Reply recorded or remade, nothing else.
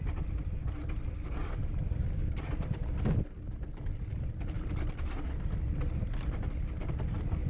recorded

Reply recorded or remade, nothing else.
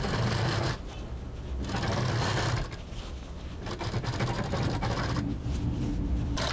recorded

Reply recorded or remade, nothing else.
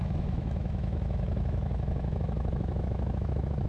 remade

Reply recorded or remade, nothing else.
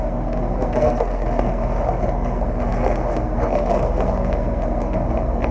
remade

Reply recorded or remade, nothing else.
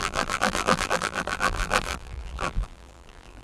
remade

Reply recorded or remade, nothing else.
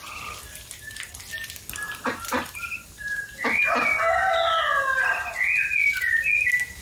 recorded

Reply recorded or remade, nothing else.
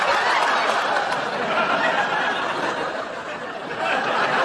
recorded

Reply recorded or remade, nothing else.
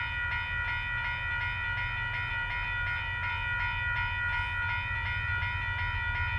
recorded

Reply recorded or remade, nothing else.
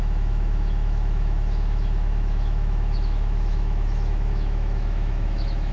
remade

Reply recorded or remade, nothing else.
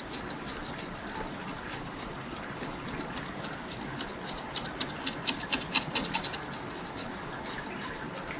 recorded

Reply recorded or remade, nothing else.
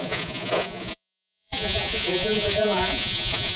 remade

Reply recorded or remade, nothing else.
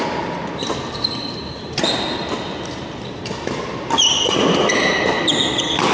recorded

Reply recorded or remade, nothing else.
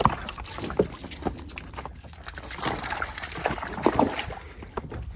recorded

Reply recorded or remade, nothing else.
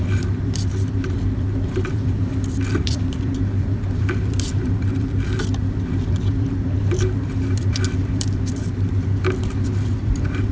remade